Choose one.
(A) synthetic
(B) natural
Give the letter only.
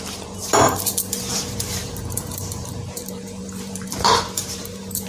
A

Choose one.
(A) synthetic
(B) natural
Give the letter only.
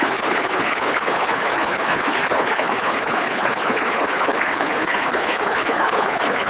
A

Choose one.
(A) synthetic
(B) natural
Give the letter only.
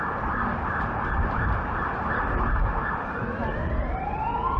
A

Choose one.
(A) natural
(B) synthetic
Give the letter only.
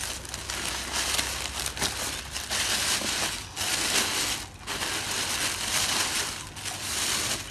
A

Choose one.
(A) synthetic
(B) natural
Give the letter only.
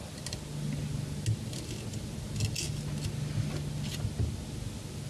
B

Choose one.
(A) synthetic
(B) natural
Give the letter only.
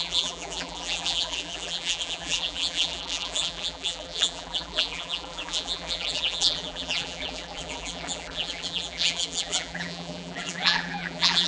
A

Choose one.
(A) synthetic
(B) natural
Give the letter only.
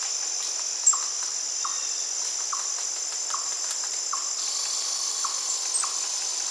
B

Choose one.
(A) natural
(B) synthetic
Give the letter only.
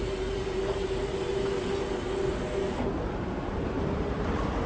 A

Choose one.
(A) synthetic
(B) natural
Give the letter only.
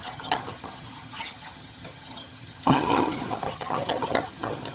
A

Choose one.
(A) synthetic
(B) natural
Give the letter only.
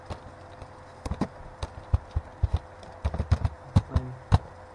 B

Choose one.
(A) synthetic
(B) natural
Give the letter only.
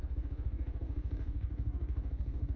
A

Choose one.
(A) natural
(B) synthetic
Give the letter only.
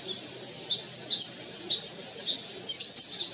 A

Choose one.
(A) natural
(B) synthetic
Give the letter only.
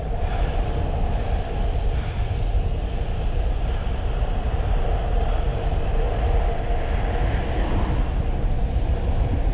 B